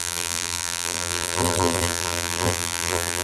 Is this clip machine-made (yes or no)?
yes